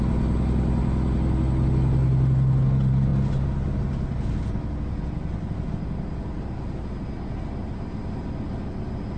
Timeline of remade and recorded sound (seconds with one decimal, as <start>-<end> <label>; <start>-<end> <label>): 0.0-9.2 recorded